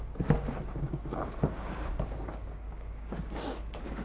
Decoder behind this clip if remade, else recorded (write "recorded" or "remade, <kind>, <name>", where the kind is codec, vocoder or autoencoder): remade, codec, DAC